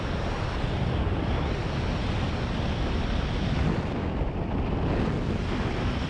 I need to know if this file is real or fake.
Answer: real